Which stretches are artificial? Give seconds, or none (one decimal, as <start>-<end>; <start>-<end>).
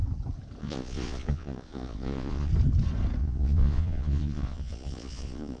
0.6-2.5; 3.2-5.6